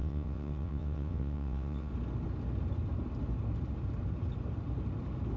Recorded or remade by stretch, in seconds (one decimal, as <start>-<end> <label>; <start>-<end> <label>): 0.0-1.9 remade; 1.9-5.4 recorded